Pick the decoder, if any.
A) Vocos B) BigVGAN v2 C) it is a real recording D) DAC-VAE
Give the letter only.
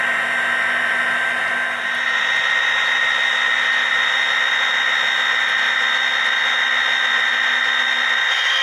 C